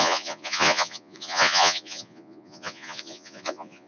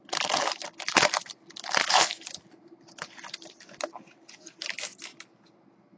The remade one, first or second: first